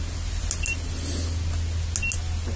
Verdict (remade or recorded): recorded